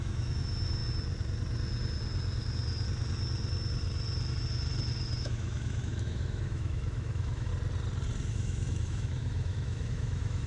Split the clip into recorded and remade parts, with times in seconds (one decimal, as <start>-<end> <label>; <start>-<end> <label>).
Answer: 0.0-0.8 remade; 0.8-5.2 recorded; 5.2-7.5 remade; 7.5-8.3 recorded; 8.3-10.5 remade